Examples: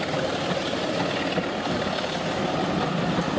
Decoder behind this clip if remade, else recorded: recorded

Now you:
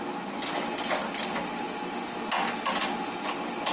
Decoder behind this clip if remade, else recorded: recorded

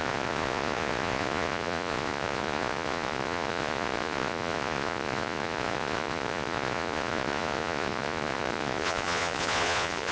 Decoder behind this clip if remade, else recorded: remade, vocoder, Vocos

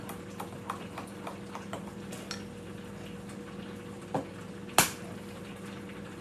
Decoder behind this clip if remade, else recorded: recorded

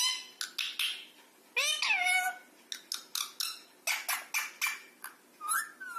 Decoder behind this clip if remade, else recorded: recorded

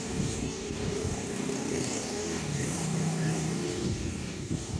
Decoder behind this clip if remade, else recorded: remade, codec, DAC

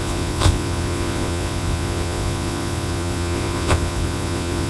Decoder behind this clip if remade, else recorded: remade, vocoder, Vocos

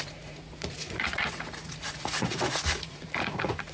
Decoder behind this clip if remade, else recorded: remade, vocoder, Vocos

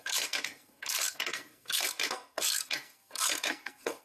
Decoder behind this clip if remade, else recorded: remade, codec, SNAC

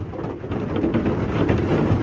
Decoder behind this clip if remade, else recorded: recorded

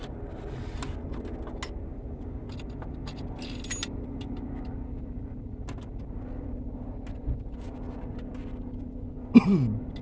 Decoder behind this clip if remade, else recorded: recorded